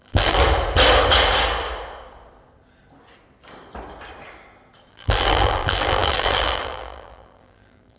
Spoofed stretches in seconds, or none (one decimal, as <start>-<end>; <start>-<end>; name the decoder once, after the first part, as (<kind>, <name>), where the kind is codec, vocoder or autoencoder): 0.0-0.4 (vocoder, BigVGAN v2); 4.9-8.0